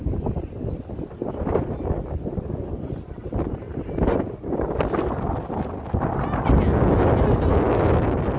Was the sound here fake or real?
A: real